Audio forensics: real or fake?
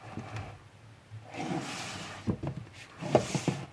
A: real